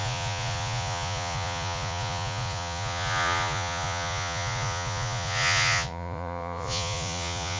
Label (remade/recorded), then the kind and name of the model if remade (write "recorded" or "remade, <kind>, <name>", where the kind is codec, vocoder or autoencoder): remade, vocoder, Vocos